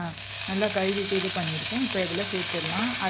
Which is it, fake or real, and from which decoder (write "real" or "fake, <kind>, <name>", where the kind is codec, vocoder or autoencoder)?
fake, codec, DAC